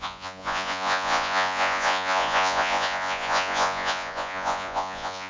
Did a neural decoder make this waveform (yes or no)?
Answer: yes